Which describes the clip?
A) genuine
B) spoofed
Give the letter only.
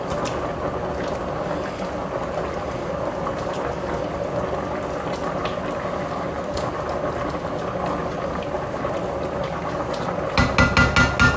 A